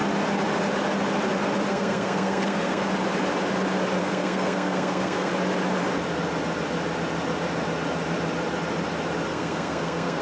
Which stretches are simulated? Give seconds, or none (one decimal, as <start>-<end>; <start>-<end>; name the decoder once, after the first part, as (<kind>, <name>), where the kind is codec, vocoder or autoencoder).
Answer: 1.7-2.8 (codec, SNAC); 4.0-5.3; 9.3-10.2